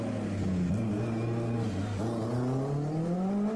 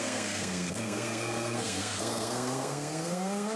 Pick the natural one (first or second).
first